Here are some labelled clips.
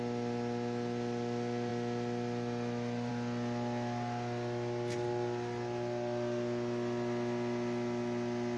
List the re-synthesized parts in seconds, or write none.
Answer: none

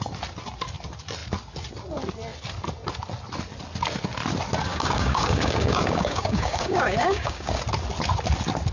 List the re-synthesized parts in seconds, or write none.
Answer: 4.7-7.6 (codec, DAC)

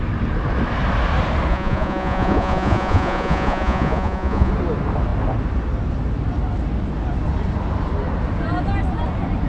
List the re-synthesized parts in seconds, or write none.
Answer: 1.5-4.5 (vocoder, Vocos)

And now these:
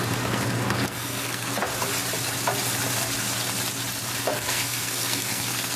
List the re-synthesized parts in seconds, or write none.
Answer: 0.0-1.5 (codec, SNAC); 4.2-5.8

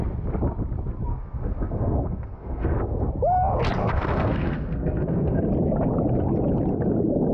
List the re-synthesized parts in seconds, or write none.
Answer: 1.1-3.1 (codec, SNAC); 3.8-5.4

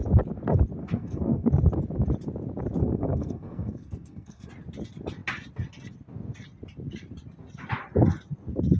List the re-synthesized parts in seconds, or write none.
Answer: 0.8-1.5 (codec, SNAC); 2.8-4.5